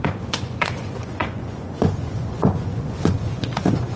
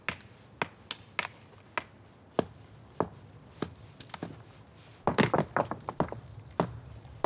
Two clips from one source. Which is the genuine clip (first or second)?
second